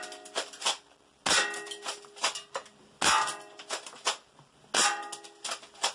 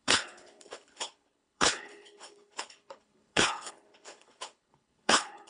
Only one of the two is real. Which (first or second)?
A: first